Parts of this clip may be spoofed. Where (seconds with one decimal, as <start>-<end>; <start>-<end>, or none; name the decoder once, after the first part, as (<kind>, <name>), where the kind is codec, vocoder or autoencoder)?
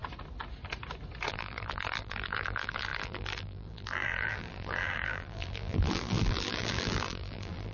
1.3-7.7 (vocoder, BigVGAN v2)